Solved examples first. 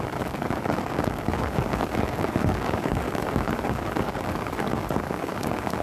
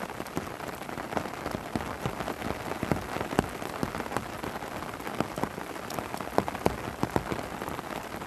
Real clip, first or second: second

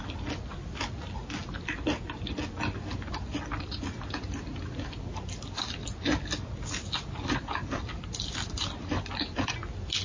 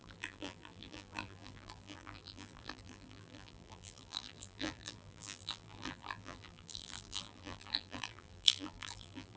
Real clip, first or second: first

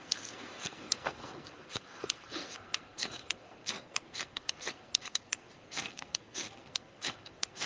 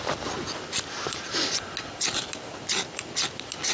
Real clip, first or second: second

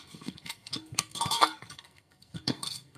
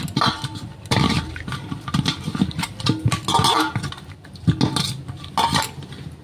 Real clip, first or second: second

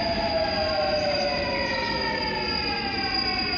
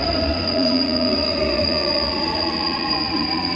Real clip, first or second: first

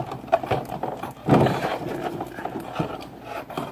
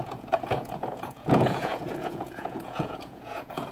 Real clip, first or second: first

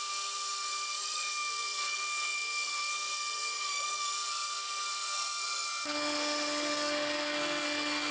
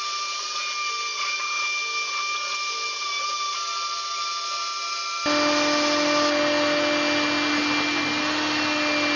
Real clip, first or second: second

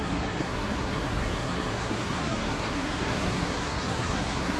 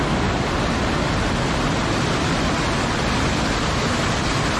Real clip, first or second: second